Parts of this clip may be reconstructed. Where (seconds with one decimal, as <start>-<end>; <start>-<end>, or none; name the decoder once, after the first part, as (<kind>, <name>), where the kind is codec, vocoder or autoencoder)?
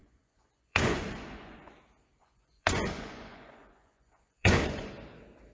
0.0-1.7 (vocoder, Vocos); 2.2-4.9